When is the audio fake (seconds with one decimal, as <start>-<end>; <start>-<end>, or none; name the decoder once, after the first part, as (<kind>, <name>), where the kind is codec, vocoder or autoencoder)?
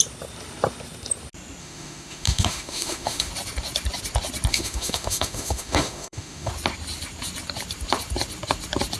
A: 1.6-3.3 (autoencoder, DAC-VAE); 4.5-6.5